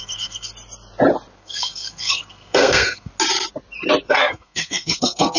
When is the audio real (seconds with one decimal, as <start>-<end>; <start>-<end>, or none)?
0.5-1.4; 3.1-4.1